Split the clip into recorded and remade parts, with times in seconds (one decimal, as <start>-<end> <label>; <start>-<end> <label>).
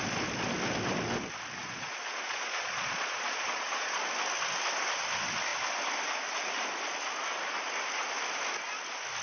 0.0-1.6 recorded; 1.6-4.0 remade; 4.0-9.2 recorded